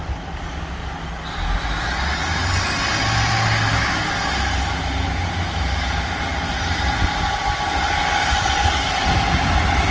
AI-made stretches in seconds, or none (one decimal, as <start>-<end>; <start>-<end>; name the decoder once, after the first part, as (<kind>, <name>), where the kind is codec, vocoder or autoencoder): none